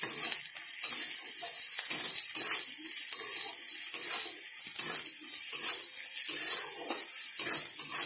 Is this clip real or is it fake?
real